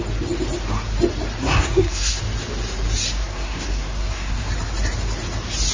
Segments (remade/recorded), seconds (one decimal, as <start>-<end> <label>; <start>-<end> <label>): 0.0-1.4 recorded; 1.4-2.2 remade; 2.2-3.2 recorded; 3.2-4.5 remade; 4.5-5.7 recorded